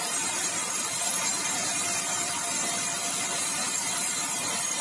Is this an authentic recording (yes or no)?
yes